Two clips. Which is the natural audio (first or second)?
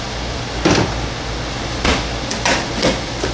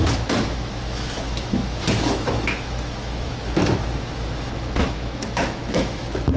first